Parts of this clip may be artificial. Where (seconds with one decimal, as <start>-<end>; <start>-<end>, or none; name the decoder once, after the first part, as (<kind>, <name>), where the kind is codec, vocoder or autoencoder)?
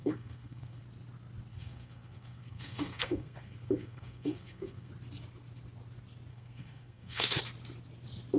0.0-0.8 (codec, SNAC); 1.5-4.9; 6.3-7.4